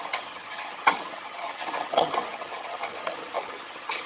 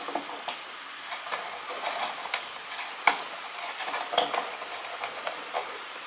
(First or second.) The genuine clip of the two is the second